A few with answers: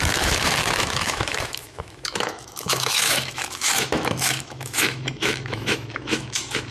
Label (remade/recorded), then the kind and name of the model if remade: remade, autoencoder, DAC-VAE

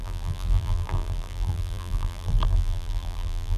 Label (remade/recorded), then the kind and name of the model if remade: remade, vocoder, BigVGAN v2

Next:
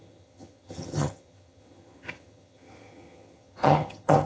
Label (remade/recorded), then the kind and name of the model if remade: remade, vocoder, HiFi-GAN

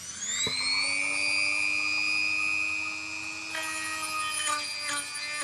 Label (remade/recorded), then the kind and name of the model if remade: recorded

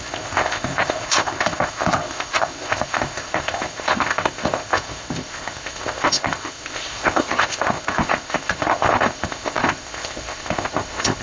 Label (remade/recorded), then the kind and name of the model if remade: remade, codec, ZipCodec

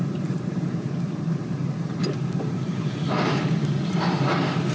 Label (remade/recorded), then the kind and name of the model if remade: remade, vocoder, BigVGAN v2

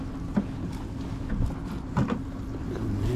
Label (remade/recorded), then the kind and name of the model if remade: recorded